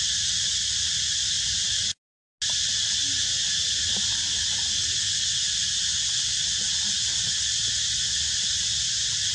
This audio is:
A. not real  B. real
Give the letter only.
B